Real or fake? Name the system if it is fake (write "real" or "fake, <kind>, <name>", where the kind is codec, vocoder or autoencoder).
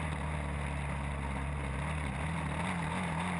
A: real